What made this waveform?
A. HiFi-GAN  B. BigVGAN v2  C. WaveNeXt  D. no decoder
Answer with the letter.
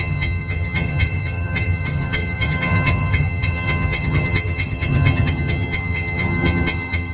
A